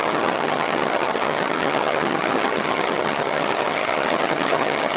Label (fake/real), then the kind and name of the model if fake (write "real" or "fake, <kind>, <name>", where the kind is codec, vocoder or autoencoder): fake, vocoder, HiFi-GAN